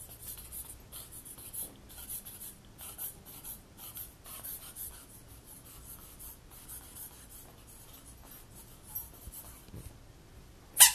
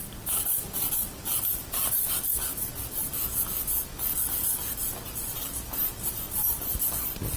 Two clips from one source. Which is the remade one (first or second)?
second